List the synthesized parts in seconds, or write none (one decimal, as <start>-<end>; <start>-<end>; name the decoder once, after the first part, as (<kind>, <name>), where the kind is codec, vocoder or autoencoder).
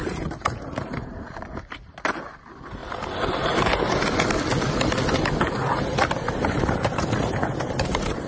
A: 0.0-2.8 (vocoder, BigVGAN v2); 6.4-8.3